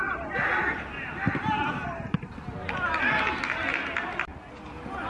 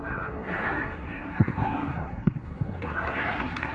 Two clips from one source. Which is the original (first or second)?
first